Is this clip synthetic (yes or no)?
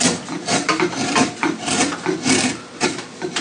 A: yes